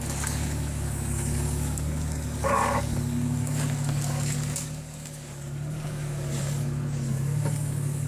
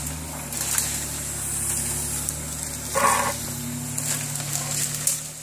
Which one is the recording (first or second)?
second